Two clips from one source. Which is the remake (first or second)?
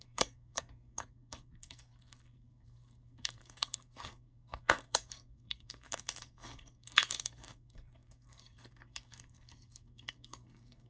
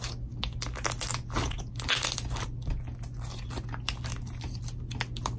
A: first